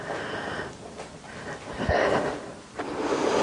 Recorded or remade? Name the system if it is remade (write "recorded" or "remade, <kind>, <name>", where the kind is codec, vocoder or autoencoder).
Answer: recorded